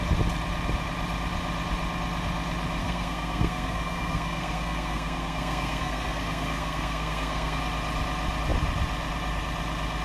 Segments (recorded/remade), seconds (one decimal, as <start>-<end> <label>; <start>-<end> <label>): 0.0-2.8 recorded; 2.8-7.6 remade; 7.6-10.0 recorded